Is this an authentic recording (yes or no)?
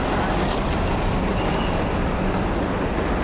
yes